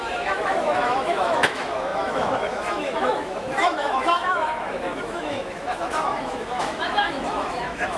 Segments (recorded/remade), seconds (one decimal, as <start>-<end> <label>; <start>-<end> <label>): 0.0-8.0 remade